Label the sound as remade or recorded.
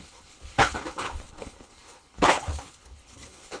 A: remade